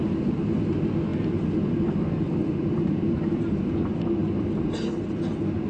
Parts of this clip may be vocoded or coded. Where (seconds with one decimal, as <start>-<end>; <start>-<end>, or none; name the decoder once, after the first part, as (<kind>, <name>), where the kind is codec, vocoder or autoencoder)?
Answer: 2.4-3.6 (vocoder, BigVGAN v2)